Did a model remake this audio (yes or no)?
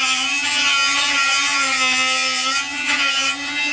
yes